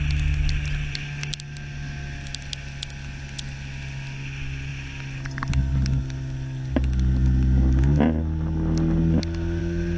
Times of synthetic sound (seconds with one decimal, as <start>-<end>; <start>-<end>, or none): none